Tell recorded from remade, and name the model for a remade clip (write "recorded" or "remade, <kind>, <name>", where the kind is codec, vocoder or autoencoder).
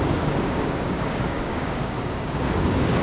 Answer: remade, codec, DAC